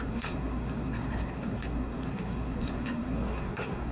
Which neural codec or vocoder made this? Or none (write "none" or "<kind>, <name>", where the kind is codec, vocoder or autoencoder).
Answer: codec, SNAC